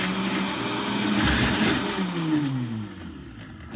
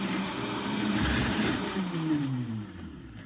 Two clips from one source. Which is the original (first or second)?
first